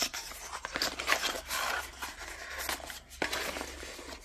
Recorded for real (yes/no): yes